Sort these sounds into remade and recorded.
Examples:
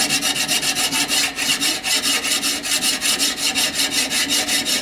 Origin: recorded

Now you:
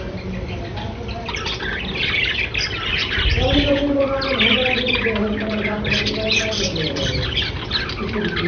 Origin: recorded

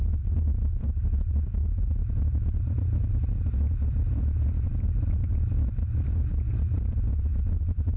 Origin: remade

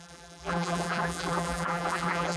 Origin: remade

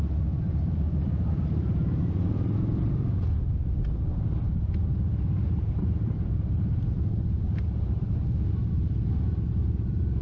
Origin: remade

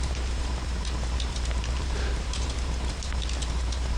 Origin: remade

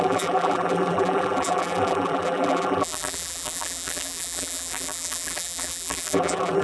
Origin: remade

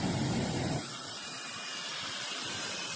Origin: remade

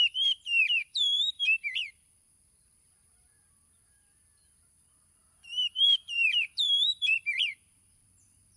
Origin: remade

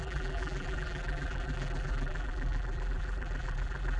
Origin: remade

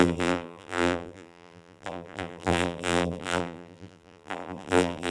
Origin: remade